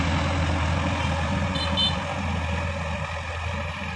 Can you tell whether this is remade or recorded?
recorded